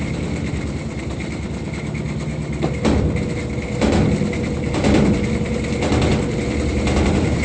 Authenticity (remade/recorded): recorded